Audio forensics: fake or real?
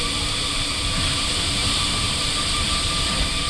fake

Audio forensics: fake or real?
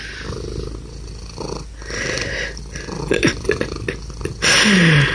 real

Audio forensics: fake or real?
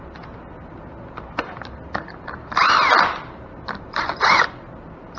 real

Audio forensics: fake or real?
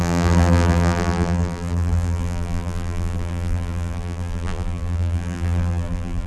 fake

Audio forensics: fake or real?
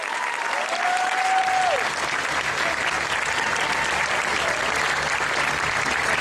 real